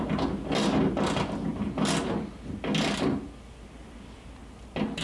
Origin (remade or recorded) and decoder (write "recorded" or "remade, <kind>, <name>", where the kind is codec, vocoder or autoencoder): recorded